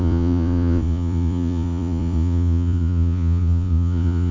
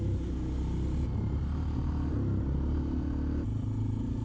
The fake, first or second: first